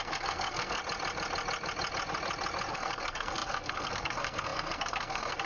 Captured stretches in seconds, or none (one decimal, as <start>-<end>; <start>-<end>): 0.8-2.7